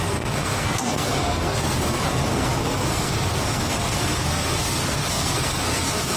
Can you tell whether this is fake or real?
fake